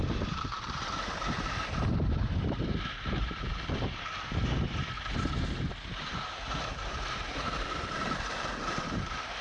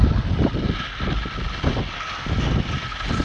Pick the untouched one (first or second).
second